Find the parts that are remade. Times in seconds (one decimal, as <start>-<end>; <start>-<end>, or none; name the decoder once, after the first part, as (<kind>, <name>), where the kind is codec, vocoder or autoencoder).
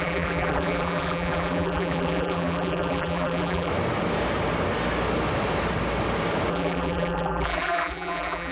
0.0-3.7 (vocoder, BigVGAN v2); 6.5-8.5